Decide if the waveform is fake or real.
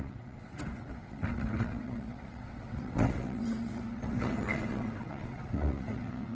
fake